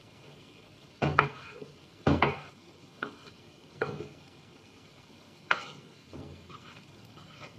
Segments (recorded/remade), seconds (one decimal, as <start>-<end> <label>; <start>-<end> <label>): 0.0-7.6 remade